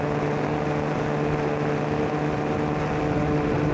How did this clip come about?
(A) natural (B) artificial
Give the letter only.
A